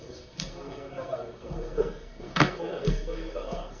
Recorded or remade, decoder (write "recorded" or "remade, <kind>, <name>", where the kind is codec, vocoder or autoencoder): remade, codec, SNAC